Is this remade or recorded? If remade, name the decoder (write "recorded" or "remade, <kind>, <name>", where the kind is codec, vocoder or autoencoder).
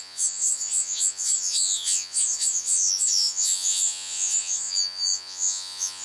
remade, vocoder, Vocos